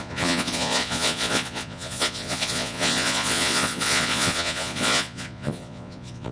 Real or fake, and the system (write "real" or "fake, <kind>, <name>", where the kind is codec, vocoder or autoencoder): fake, vocoder, Vocos